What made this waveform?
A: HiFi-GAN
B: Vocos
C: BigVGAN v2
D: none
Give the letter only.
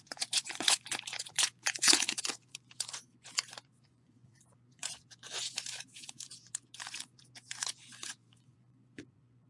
B